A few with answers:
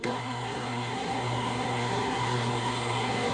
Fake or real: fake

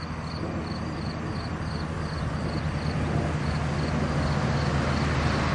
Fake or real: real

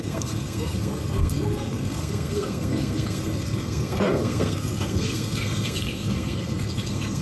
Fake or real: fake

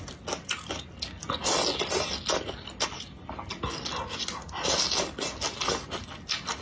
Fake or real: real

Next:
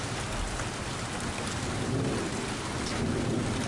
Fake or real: real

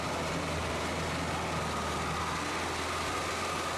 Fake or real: real